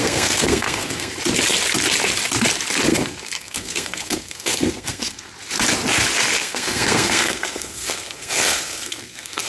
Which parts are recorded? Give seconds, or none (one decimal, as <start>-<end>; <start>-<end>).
1.1-2.9; 5.3-6.4